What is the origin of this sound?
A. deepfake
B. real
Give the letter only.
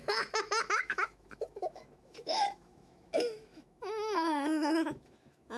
A